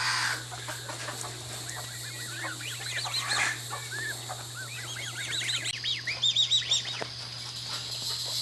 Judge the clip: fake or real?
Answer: real